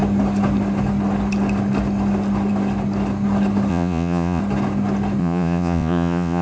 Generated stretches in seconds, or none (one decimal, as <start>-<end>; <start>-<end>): 3.7-4.4; 5.2-6.4